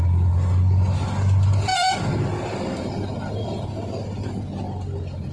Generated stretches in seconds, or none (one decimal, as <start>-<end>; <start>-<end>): none